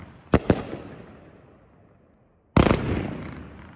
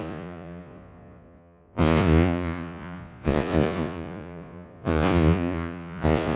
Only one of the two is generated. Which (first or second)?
second